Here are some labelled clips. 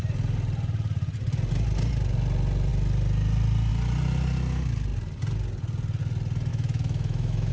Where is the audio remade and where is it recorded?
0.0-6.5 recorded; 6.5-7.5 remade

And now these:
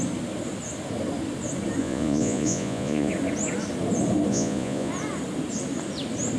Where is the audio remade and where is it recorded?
0.0-1.8 recorded; 1.8-3.1 remade; 3.1-4.3 recorded; 4.3-4.9 remade; 4.9-6.4 recorded